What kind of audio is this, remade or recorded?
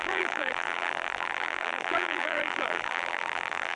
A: remade